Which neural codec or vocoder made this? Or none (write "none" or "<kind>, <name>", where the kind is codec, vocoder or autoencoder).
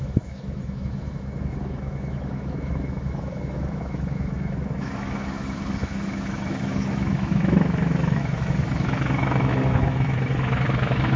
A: autoencoder, DAC-VAE